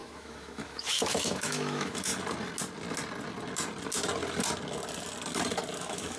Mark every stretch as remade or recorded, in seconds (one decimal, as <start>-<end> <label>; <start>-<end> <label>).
0.0-2.1 remade; 2.1-5.8 recorded; 5.8-6.2 remade